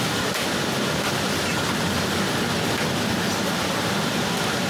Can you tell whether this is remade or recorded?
recorded